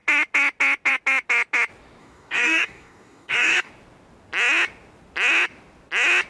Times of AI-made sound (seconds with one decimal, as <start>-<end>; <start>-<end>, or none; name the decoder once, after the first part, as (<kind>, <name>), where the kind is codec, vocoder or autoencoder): 2.0-3.7 (codec, DAC)